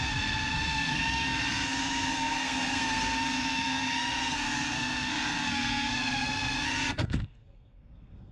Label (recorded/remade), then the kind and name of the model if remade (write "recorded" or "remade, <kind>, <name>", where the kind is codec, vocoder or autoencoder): remade, codec, SNAC